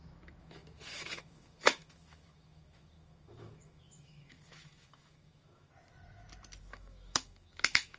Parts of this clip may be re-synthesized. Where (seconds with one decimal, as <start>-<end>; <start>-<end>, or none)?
0.0-5.7; 6.6-8.0